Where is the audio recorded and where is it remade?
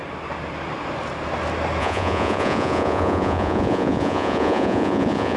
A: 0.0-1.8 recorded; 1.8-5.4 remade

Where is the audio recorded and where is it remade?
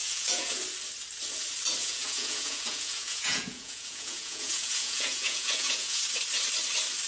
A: 0.0-0.6 remade; 0.6-1.8 recorded; 1.8-6.0 remade; 6.0-7.1 recorded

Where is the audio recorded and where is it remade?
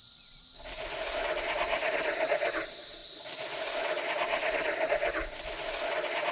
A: 0.0-6.3 recorded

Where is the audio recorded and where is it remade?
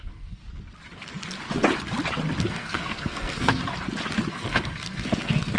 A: 0.0-0.4 remade; 0.4-2.4 recorded; 2.4-3.6 remade; 3.6-4.3 recorded; 4.3-5.6 remade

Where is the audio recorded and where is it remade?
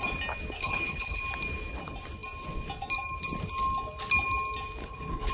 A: 0.0-0.6 recorded; 0.6-1.2 remade; 1.2-4.8 recorded; 4.8-5.3 remade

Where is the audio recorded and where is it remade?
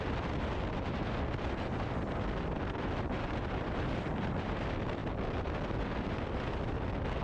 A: 0.0-7.2 recorded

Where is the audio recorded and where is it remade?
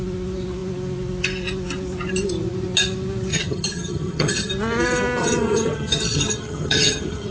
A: 0.0-3.3 recorded; 3.3-4.5 remade; 4.5-5.2 recorded; 5.2-7.3 remade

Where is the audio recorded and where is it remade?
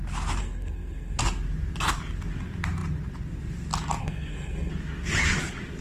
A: 0.0-0.4 recorded; 0.4-1.2 remade; 1.2-4.0 recorded; 4.0-4.7 remade; 4.7-5.8 recorded